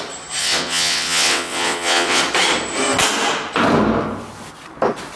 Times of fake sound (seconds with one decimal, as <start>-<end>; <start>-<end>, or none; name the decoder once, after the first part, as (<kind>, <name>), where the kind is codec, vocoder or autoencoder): 0.4-2.2 (vocoder, WaveNeXt)